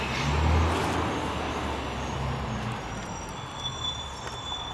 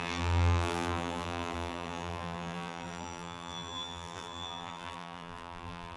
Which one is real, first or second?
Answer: first